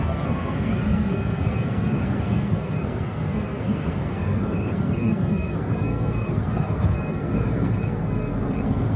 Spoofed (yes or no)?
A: yes